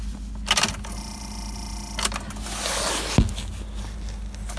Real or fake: real